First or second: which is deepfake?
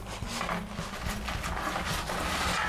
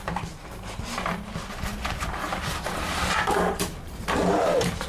second